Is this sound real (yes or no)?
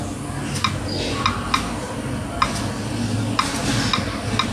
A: yes